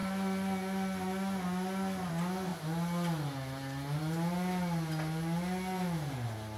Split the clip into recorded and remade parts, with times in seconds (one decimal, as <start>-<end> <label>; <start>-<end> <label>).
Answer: 0.0-6.6 recorded